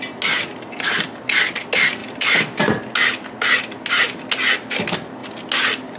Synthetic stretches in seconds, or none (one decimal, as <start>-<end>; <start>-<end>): 2.0-2.6